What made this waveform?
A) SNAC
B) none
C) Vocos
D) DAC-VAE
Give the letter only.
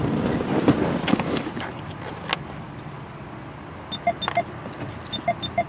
B